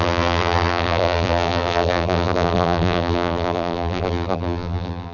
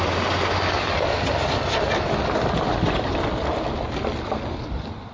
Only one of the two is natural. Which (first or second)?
second